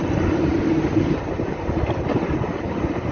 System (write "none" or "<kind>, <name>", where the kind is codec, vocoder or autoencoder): vocoder, BigVGAN v2